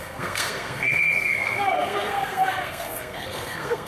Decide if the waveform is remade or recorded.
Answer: remade